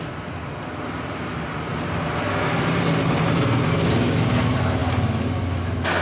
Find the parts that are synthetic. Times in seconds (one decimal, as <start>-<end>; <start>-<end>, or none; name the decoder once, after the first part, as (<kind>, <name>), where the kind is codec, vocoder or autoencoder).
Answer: none